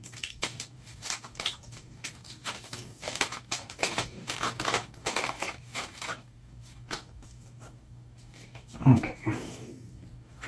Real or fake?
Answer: fake